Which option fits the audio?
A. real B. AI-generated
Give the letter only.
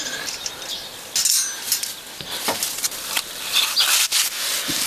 A